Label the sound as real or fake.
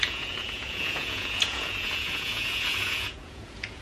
fake